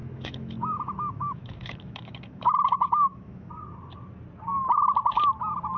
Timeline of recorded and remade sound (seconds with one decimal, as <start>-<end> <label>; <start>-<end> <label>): 0.0-3.5 remade; 3.5-5.8 recorded